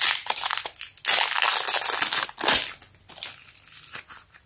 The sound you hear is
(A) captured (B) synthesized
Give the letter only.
A